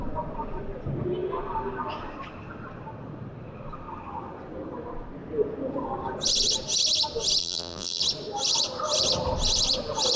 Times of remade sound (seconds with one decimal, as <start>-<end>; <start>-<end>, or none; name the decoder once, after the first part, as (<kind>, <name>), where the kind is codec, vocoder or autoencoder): 7.4-8.0 (vocoder, BigVGAN v2)